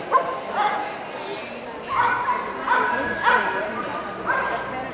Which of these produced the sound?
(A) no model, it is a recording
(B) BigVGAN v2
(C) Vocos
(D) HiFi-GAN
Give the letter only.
A